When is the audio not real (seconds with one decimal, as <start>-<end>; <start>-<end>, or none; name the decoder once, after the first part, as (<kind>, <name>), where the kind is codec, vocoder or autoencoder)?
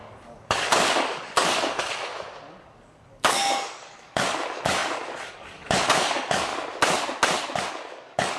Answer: 0.0-2.1 (codec, DAC); 2.6-6.5; 7.7-8.4